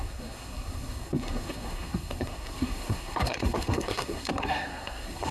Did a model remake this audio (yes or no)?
yes